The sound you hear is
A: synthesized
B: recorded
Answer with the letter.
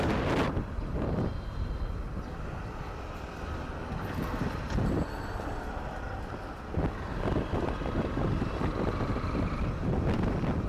B